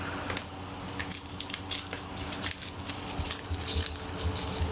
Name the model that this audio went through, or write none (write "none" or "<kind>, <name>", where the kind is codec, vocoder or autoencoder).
none